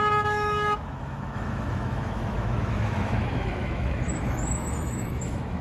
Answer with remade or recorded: remade